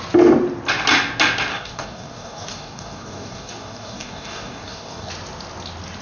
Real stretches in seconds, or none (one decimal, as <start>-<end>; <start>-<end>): 0.0-1.5; 5.1-6.0